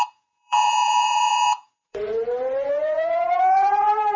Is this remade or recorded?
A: remade